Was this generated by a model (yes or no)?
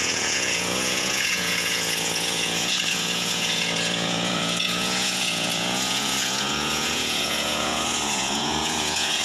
yes